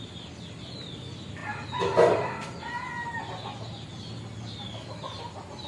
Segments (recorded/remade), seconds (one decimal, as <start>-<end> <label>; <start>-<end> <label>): 0.0-5.7 recorded